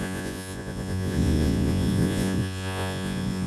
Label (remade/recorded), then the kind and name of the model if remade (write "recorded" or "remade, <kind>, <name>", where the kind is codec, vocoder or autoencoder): remade, vocoder, Vocos